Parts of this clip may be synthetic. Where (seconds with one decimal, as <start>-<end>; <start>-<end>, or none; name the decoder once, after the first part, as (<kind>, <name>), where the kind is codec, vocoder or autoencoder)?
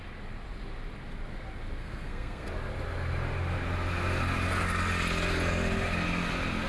1.8-2.5 (codec, SNAC)